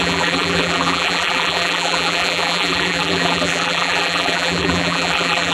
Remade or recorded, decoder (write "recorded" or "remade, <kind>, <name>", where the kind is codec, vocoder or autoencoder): remade, vocoder, BigVGAN v2